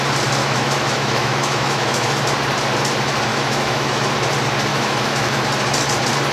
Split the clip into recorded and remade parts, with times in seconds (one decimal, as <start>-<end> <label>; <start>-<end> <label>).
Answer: 0.0-0.4 recorded; 0.4-2.2 remade; 2.2-3.3 recorded; 3.3-4.1 remade; 4.1-4.7 recorded; 4.7-5.4 remade; 5.4-6.3 recorded